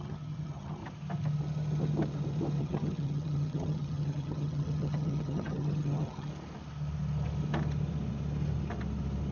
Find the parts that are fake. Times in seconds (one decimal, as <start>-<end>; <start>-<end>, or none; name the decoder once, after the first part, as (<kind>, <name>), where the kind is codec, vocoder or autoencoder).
0.0-0.8 (vocoder, HiFi-GAN); 2.6-6.3